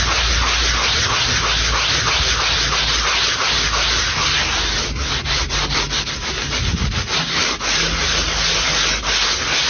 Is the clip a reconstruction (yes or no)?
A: no